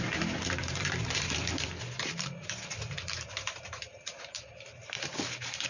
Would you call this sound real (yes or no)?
no